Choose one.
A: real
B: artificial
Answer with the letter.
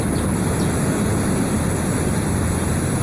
A